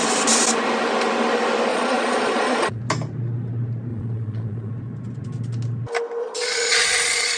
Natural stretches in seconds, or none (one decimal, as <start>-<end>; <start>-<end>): 0.0-1.7; 2.8-3.9; 4.7-6.2